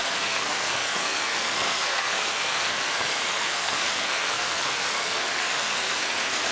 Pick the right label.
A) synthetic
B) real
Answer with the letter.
A